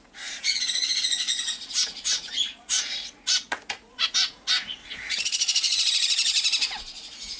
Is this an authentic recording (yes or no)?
no